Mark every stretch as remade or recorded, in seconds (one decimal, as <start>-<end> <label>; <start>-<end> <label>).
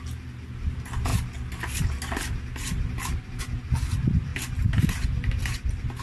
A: 0.0-6.0 recorded